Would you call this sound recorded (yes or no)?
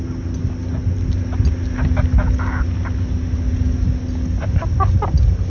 yes